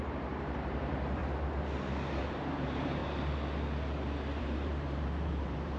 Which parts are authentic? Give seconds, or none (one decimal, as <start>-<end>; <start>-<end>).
1.2-2.2; 3.0-4.4

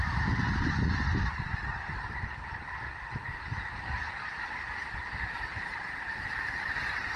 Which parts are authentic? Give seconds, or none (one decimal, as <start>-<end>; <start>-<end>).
1.6-5.9

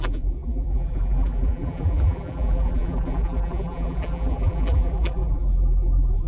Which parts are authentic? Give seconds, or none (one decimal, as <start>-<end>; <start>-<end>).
none

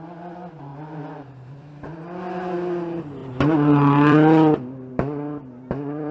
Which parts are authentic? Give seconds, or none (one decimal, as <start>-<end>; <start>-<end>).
0.0-0.7; 1.7-3.2; 4.9-6.1

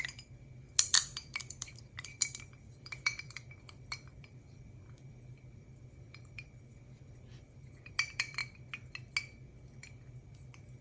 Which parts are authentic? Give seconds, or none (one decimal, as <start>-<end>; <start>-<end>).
8.4-9.8

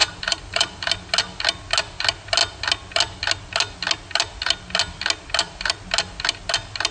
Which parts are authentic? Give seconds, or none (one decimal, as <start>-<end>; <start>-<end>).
1.1-6.9